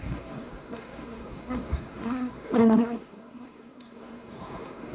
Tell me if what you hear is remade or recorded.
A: remade